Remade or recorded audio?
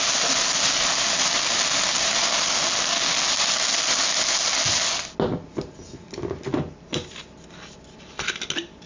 recorded